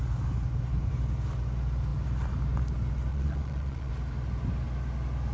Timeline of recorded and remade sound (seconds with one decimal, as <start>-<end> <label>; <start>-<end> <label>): 0.0-3.1 recorded; 3.1-3.9 remade; 3.9-5.3 recorded